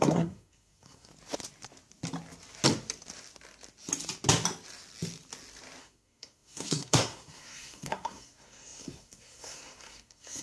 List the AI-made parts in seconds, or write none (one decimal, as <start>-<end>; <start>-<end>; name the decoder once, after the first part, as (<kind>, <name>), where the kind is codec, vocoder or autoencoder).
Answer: 0.0-1.1 (codec, SNAC); 5.8-10.4